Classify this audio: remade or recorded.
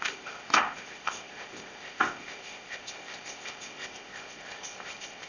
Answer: remade